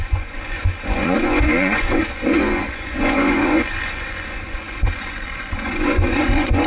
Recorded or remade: remade